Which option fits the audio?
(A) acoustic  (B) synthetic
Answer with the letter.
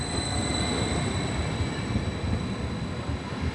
A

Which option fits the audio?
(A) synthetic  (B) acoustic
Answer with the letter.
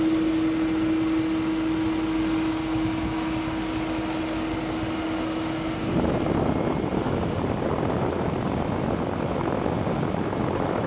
B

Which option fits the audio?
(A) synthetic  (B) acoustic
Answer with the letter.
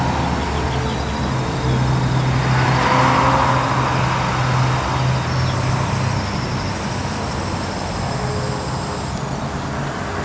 B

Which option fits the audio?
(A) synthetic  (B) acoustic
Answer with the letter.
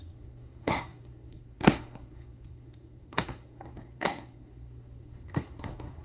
A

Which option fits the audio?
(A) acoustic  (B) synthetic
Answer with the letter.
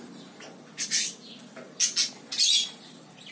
A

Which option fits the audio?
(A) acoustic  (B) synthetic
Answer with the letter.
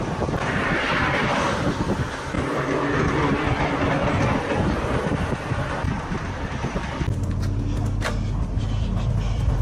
A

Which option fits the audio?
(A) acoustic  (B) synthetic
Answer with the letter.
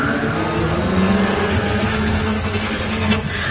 B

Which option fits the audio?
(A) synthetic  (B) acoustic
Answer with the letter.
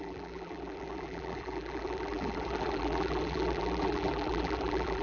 A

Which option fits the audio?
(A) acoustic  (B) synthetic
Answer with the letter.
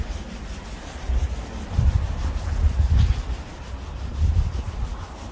A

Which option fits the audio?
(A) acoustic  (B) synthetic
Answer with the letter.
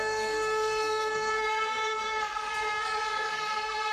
B